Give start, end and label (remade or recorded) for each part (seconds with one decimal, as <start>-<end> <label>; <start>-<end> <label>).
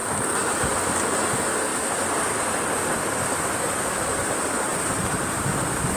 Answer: 0.0-4.7 recorded; 4.7-5.3 remade; 5.3-6.0 recorded